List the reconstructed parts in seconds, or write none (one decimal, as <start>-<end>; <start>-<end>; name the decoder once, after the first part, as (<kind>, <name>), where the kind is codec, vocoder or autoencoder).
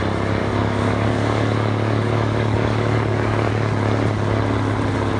0.4-3.5 (codec, DAC)